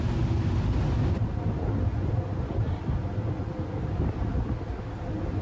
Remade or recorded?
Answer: recorded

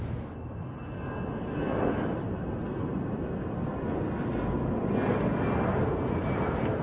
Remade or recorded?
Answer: recorded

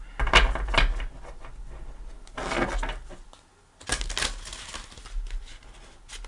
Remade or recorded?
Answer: recorded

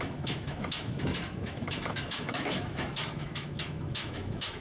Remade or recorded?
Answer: remade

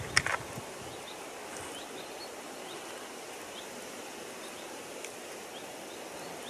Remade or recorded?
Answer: recorded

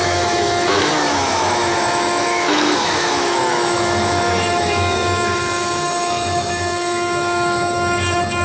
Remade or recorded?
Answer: remade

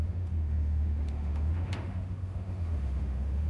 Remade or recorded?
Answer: remade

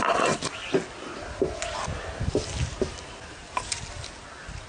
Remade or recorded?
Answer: recorded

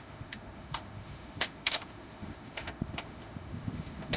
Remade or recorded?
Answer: remade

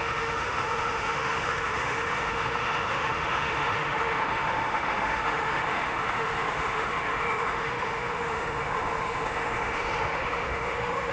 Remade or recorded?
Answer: remade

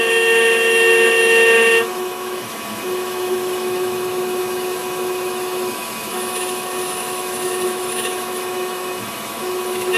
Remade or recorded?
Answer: remade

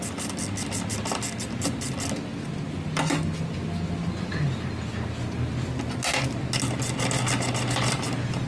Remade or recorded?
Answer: recorded